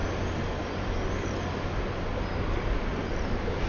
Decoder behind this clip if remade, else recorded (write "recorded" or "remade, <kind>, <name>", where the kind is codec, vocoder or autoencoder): recorded